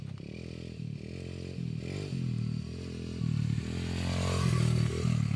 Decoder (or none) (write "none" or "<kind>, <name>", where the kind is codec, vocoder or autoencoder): none